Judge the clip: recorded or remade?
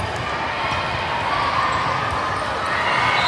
recorded